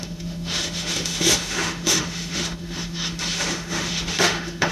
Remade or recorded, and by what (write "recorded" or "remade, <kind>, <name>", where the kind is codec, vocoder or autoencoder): remade, autoencoder, DAC-VAE